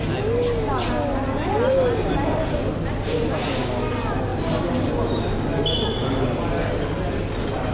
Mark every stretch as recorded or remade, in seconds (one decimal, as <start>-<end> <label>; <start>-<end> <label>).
0.0-7.7 recorded